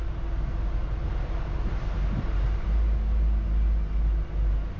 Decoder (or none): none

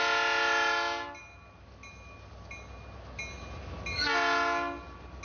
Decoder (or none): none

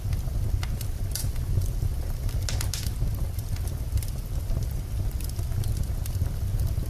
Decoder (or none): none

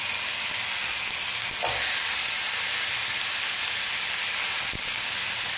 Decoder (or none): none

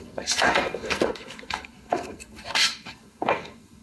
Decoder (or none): codec, SNAC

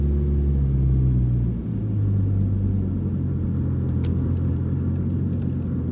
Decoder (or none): none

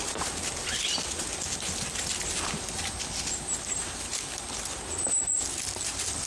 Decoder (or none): none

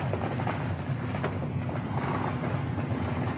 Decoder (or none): none